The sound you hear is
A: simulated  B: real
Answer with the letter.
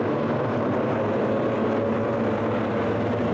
B